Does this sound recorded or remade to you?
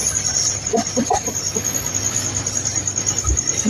recorded